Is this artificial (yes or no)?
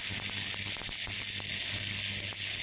no